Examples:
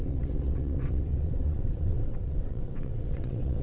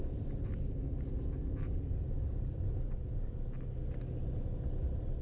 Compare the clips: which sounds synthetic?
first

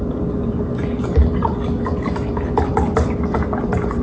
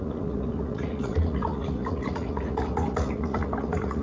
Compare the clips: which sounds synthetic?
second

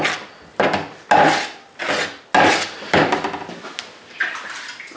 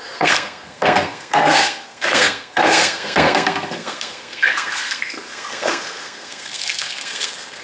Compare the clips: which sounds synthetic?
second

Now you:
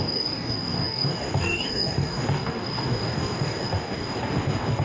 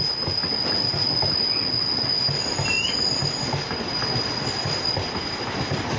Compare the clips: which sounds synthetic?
first